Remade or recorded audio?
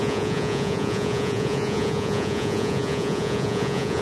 remade